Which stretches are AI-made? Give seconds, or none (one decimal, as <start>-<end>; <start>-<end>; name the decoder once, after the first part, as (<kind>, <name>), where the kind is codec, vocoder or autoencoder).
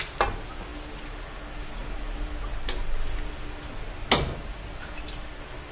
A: none